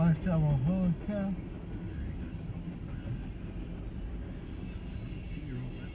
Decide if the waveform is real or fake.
real